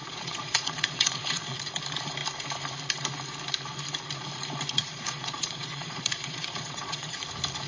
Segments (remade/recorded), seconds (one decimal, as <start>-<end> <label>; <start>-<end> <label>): 0.0-1.6 remade; 1.6-4.8 recorded; 4.8-7.2 remade; 7.2-7.7 recorded